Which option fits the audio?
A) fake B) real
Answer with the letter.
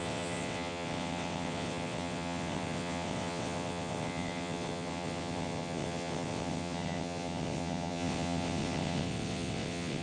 A